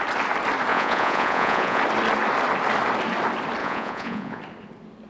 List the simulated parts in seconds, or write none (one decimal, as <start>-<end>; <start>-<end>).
0.7-1.8; 3.6-4.4